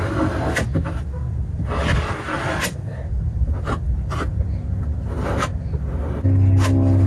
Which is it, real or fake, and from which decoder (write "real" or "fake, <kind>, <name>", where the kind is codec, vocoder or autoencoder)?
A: real